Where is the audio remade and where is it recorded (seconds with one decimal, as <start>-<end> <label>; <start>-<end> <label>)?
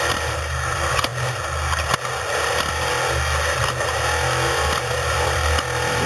0.0-1.1 remade; 1.1-4.8 recorded; 4.8-6.1 remade